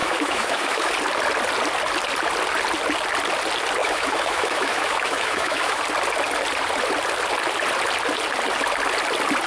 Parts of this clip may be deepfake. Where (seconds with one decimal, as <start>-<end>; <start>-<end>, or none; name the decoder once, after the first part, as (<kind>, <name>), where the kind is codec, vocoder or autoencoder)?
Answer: 0.0-0.9 (autoencoder, DAC-VAE); 3.8-5.8